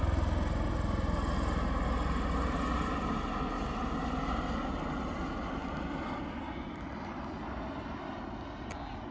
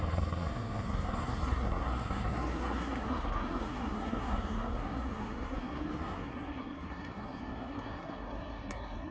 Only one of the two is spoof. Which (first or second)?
second